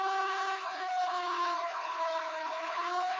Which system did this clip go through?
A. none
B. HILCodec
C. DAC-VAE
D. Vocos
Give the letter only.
B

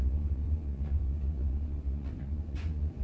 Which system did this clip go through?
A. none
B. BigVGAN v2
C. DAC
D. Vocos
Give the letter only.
D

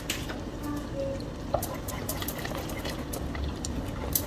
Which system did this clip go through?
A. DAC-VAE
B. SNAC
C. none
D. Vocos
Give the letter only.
C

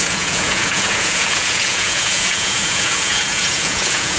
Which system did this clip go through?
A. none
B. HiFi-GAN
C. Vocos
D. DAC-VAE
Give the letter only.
C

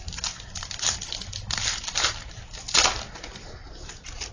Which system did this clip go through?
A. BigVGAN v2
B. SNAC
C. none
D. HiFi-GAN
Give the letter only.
C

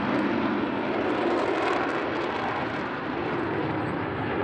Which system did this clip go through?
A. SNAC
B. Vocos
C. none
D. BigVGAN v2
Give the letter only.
C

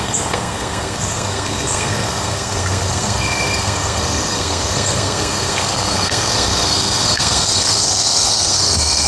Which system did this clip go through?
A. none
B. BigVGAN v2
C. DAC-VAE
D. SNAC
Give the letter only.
D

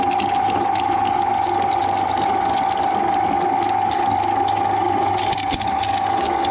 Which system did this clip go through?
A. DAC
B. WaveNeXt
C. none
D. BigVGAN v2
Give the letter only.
C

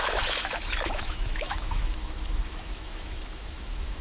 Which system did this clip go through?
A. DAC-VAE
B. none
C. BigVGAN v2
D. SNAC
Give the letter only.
A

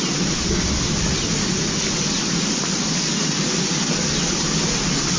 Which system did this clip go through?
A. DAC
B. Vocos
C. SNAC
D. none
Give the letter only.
D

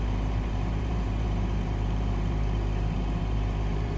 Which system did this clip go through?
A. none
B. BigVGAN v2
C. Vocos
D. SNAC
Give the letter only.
B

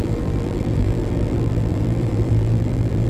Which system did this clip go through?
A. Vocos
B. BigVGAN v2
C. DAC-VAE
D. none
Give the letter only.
B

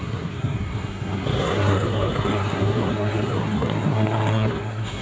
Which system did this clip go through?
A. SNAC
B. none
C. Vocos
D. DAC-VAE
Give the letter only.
A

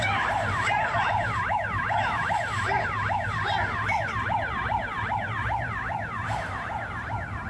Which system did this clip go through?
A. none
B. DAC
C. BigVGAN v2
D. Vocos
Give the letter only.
C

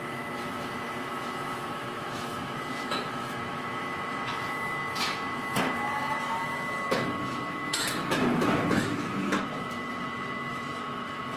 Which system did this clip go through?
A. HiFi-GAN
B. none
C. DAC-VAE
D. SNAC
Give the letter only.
C